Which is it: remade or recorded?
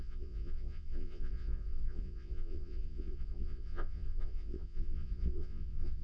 remade